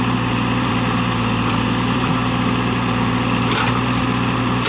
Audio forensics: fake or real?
fake